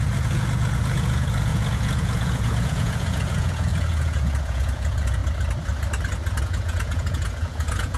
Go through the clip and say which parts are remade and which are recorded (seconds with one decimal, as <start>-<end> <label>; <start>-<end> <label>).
0.0-5.2 remade; 5.2-6.4 recorded; 6.4-8.0 remade